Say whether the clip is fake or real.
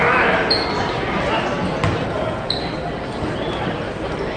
real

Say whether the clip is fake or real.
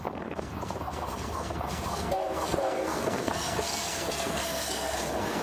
fake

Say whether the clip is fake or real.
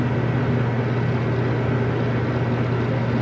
real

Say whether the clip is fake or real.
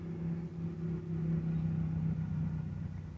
real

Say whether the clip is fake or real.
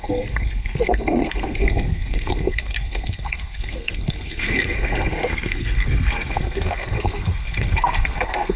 fake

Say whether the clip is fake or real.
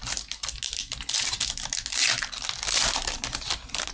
real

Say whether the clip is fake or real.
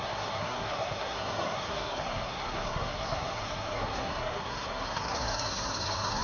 fake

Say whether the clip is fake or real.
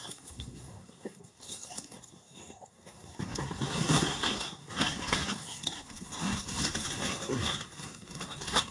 fake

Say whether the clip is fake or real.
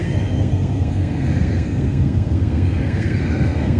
fake